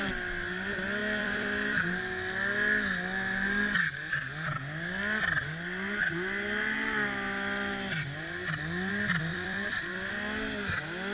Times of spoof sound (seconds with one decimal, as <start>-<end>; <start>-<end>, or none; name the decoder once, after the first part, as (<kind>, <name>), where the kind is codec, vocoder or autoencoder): 1.0-1.8 (vocoder, BigVGAN v2); 9.3-10.1